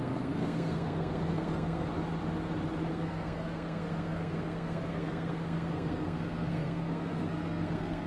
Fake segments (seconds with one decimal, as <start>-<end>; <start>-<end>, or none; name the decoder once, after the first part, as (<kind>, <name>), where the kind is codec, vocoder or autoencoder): 0.0-1.9 (codec, SNAC); 2.9-8.1